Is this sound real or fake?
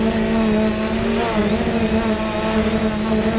real